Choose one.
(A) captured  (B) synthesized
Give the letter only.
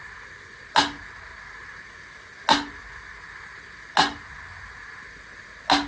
A